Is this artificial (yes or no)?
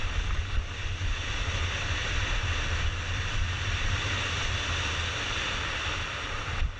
no